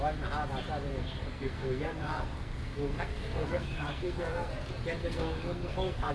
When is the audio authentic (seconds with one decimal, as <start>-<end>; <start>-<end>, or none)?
0.0-0.9; 4.5-5.0